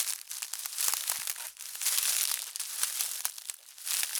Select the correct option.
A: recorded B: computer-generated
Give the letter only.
A